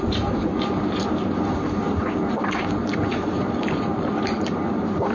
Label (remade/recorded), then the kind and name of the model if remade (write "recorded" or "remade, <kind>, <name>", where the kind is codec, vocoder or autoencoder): remade, vocoder, BigVGAN v2